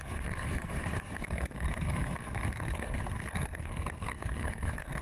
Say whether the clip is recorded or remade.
remade